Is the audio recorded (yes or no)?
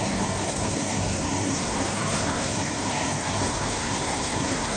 no